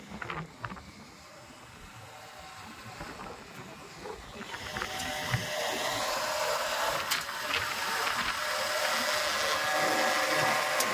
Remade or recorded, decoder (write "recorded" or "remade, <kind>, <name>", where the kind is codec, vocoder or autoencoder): recorded